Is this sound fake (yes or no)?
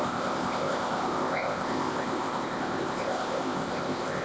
yes